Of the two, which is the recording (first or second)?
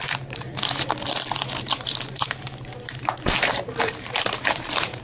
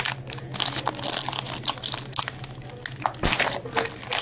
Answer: second